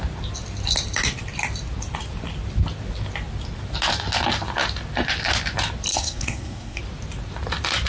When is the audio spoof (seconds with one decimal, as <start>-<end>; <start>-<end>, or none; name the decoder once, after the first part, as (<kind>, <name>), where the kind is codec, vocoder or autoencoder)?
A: 5.9-6.8 (codec, SNAC)